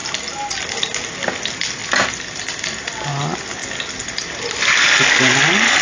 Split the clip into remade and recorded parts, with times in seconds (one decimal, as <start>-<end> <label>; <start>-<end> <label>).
0.0-5.8 recorded